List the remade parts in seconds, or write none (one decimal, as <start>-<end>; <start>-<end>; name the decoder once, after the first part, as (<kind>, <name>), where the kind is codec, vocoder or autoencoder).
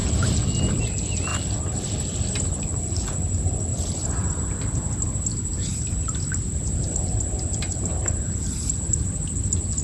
3.7-7.9 (vocoder, BigVGAN v2)